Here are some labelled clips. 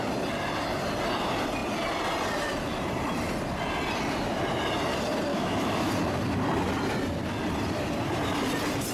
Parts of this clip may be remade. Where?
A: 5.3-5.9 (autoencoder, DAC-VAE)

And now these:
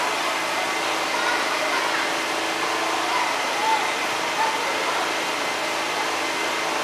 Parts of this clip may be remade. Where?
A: none

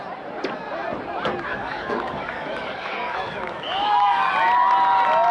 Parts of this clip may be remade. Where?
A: 1.5-4.3 (codec, DAC)